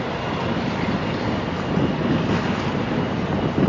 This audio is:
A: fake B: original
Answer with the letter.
B